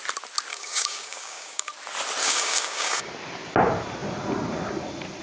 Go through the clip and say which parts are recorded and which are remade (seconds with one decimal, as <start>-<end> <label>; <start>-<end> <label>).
0.0-0.5 recorded; 0.5-1.7 remade; 1.7-2.2 recorded; 2.2-3.1 remade; 3.1-5.2 recorded